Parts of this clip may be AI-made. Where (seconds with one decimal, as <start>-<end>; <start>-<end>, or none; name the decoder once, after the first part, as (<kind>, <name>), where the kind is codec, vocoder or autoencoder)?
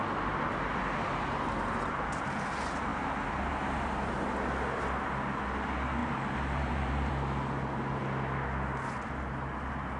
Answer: 6.0-7.1 (vocoder, BigVGAN v2)